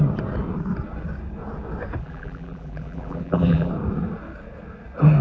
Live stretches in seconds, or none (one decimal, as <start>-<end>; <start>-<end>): 0.0-2.0; 3.7-5.2